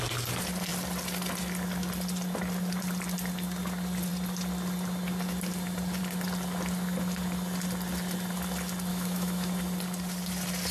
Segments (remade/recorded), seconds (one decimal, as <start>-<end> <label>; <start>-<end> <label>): 0.0-8.9 recorded; 8.9-9.5 remade; 9.5-10.7 recorded